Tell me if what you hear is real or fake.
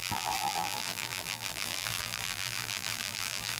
fake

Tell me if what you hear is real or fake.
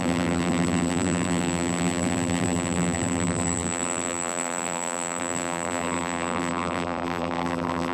fake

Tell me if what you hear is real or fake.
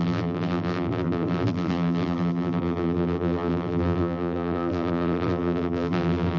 fake